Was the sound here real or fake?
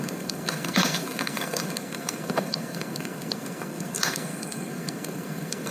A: fake